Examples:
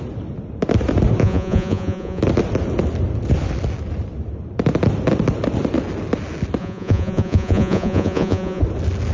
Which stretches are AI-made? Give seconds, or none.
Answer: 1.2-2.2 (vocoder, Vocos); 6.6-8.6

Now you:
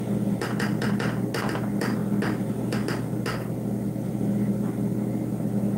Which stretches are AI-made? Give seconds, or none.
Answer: none

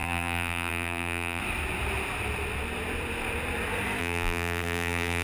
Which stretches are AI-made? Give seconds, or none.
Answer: 0.0-1.4 (vocoder, BigVGAN v2); 4.0-5.2